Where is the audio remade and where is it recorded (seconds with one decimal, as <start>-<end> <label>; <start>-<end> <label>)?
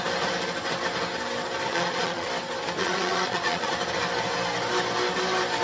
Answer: 0.0-1.7 recorded; 1.7-2.3 remade; 2.3-2.8 recorded; 2.8-3.7 remade; 3.7-5.6 recorded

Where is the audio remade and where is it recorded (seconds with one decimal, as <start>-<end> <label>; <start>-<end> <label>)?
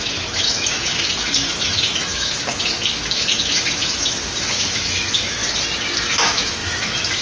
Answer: 0.0-5.4 remade; 5.4-6.0 recorded; 6.0-7.2 remade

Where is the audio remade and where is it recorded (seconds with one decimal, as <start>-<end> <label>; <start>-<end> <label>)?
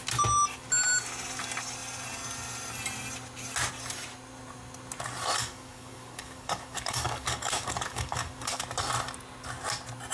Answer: 0.0-5.4 recorded; 5.4-8.6 remade; 8.6-10.1 recorded